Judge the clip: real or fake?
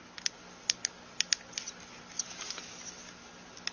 real